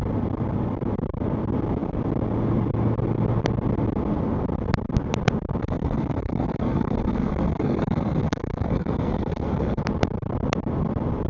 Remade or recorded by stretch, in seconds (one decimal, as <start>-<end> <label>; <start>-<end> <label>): 0.0-5.6 recorded; 5.6-9.8 remade; 9.8-11.3 recorded